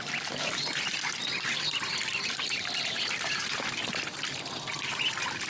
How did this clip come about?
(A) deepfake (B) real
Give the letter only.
B